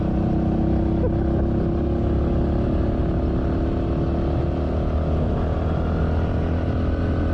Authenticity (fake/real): real